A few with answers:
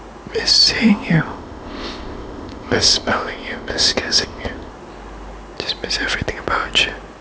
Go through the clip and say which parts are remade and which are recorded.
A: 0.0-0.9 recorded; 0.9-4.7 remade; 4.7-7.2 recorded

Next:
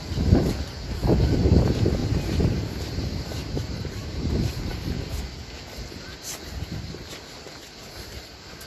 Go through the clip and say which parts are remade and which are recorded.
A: 0.0-2.0 recorded; 2.0-2.8 remade; 2.8-3.4 recorded; 3.4-4.1 remade; 4.1-8.7 recorded

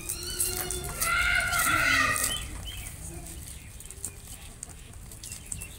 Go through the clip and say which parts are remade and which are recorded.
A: 0.0-5.8 recorded